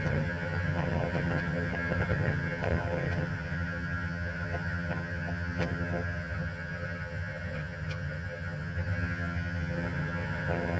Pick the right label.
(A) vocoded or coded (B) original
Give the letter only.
A